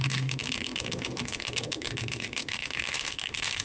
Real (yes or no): no